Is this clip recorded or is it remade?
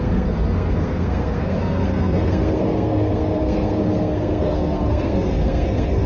remade